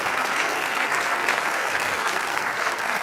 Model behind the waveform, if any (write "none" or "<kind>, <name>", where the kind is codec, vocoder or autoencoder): codec, SNAC